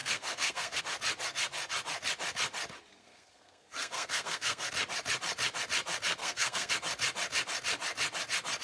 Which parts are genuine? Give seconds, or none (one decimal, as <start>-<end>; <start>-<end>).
0.8-3.0; 4.7-6.2; 6.7-8.6